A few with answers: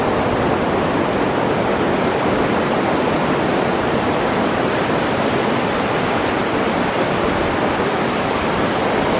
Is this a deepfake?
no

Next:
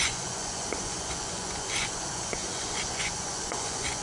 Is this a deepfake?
yes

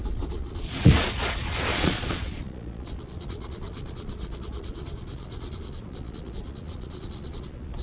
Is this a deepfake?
yes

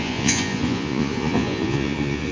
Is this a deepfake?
yes